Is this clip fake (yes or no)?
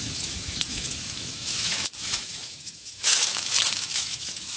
yes